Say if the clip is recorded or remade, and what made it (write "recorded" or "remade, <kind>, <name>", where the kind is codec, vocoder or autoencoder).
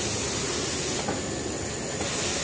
recorded